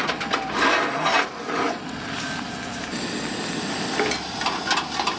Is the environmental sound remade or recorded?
recorded